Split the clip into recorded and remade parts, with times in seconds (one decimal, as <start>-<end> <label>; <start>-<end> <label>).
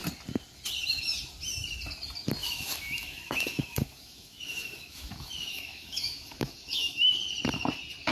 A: 0.0-2.4 recorded; 2.4-7.2 remade; 7.2-8.1 recorded